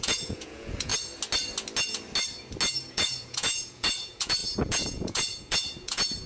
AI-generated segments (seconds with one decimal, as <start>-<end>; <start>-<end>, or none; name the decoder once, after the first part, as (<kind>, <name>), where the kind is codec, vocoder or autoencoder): 0.0-0.9 (vocoder, Vocos); 2.9-6.3